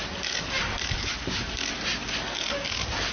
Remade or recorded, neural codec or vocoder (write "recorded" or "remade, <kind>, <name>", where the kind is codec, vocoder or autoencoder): recorded